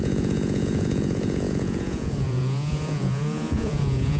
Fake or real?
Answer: fake